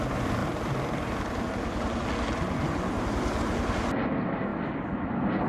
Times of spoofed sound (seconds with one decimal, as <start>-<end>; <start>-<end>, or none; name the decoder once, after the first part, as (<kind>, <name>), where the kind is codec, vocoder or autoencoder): none

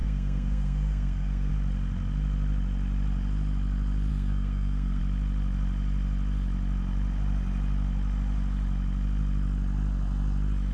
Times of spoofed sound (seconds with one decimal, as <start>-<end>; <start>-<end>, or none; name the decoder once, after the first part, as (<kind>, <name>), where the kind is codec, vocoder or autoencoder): 0.0-1.5 (codec, SNAC); 4.1-5.0

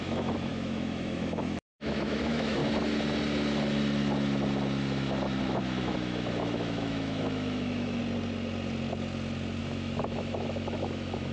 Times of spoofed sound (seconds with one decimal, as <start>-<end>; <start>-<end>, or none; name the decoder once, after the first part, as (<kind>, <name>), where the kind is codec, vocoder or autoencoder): 0.0-2.6 (autoencoder, DAC-VAE); 5.4-8.0; 9.6-11.3